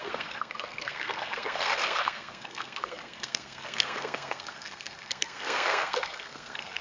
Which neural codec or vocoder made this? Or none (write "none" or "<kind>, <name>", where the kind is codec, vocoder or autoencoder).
codec, SNAC